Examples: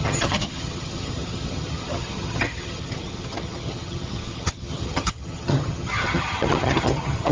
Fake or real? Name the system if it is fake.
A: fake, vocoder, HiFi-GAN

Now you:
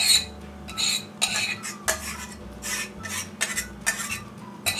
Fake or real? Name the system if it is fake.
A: real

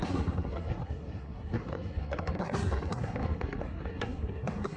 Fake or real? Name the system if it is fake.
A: fake, codec, SNAC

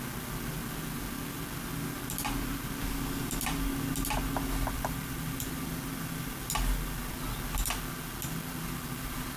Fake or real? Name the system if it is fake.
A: real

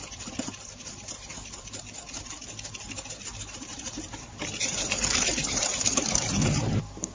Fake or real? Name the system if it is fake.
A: fake, vocoder, BigVGAN v2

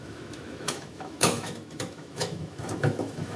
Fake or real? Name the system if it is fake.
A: fake, autoencoder, DAC-VAE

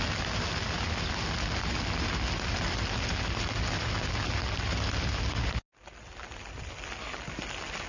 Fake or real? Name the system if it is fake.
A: real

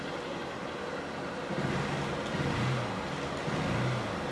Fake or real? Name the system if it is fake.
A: real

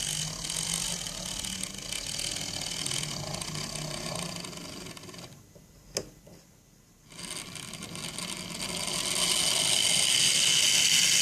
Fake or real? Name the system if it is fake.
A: real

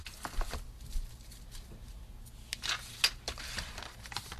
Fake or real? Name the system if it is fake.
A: real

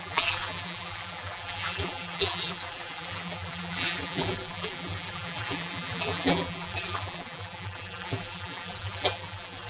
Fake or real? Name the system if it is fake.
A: fake, vocoder, BigVGAN v2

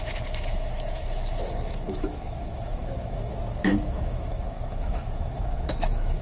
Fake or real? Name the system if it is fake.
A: fake, autoencoder, DAC-VAE